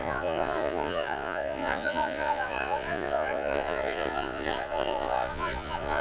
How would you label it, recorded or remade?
remade